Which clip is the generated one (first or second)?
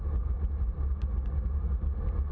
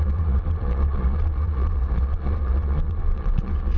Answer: second